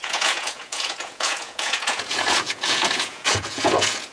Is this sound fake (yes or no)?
yes